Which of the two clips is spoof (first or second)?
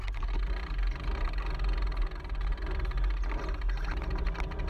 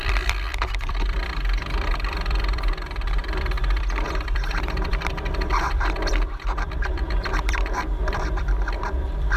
second